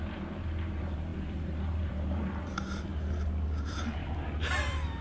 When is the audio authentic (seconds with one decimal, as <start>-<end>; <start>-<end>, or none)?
2.9-3.6